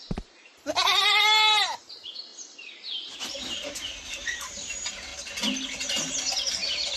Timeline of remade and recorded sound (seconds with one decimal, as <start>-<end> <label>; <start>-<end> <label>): 0.0-2.3 remade; 2.3-3.4 recorded; 3.4-5.1 remade; 5.1-6.5 recorded; 6.5-7.0 remade